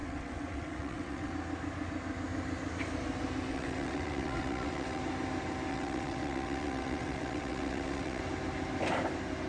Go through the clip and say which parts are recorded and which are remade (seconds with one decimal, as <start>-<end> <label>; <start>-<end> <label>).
0.0-1.3 remade; 1.3-3.5 recorded; 3.5-5.0 remade; 5.0-5.7 recorded; 5.7-8.2 remade; 8.2-9.5 recorded